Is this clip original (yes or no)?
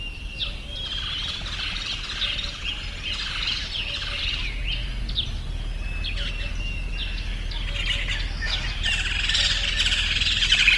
yes